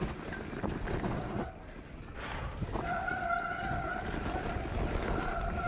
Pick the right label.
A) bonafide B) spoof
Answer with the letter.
A